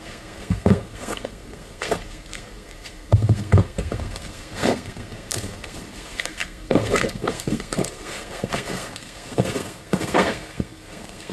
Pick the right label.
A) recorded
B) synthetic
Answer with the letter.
B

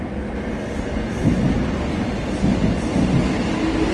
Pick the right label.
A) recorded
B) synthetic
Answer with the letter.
A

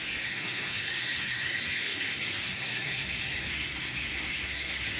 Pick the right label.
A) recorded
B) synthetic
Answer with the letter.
B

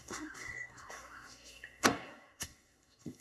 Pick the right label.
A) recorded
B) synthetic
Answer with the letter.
B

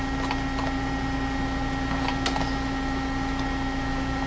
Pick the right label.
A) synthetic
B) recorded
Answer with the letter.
B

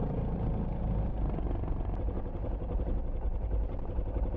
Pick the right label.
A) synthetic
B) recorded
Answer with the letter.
B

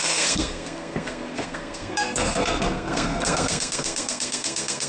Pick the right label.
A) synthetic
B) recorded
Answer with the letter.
A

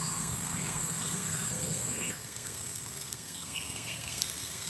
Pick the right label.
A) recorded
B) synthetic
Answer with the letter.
B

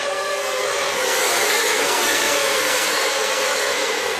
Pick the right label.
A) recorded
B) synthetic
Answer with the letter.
B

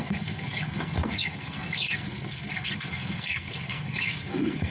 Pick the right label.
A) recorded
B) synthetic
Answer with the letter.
B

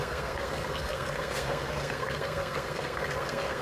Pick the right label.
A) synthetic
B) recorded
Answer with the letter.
A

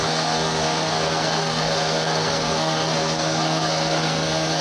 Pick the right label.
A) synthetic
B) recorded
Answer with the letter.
A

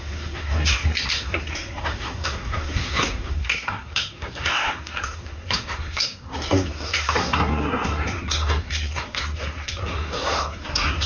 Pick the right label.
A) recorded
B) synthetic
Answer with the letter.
B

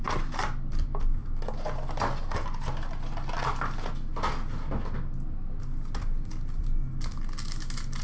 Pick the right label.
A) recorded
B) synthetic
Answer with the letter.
A